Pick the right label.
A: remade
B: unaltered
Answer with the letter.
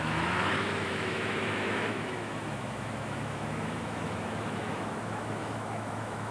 A